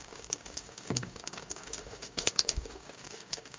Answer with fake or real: fake